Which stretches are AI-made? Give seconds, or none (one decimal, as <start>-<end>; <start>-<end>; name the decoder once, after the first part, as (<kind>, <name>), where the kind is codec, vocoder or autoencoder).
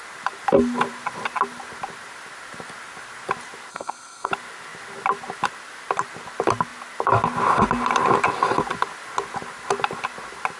3.7-4.3 (codec, SNAC)